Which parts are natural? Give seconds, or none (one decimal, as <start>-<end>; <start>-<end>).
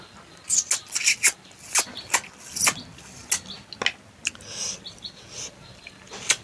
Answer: 0.0-6.4